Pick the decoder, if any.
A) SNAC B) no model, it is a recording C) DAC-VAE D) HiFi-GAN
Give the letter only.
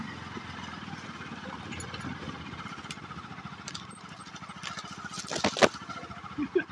B